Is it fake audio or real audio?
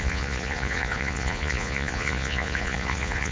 fake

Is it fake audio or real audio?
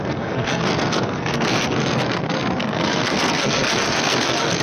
fake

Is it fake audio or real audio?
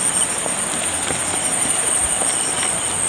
real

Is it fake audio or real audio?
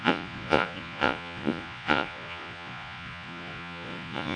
fake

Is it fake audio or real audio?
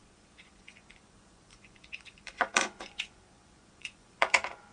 fake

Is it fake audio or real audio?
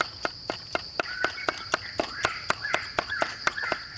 real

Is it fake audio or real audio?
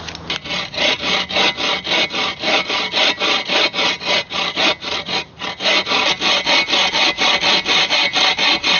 real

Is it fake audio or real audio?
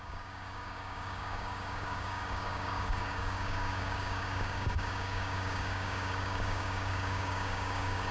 fake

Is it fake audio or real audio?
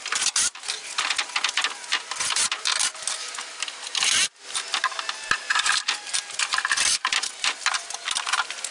real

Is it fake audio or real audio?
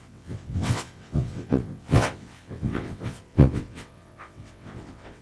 fake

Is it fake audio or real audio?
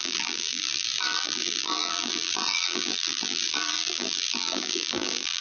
fake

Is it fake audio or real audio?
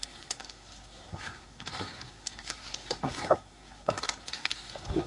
fake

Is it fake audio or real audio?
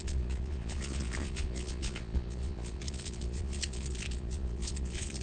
fake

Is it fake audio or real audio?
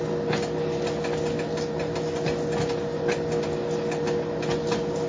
real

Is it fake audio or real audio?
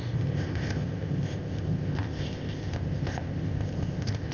fake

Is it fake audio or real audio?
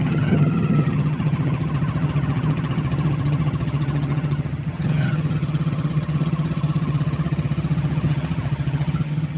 fake